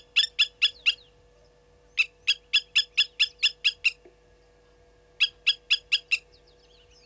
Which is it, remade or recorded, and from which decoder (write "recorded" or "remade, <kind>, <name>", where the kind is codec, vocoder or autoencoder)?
recorded